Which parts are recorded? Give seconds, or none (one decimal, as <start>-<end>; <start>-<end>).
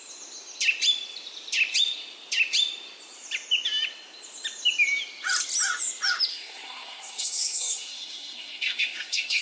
0.0-6.3